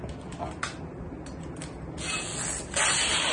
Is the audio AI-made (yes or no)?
no